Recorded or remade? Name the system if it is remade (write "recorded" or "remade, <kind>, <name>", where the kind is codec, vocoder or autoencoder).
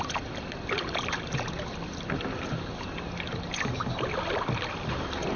recorded